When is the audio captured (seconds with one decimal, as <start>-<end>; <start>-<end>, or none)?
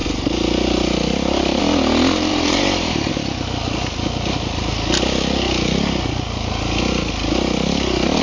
0.0-2.3; 3.1-8.2